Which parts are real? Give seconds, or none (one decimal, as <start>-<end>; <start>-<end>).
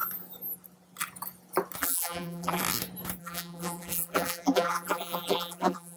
0.0-1.8; 2.6-3.2